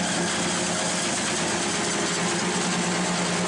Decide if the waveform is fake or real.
real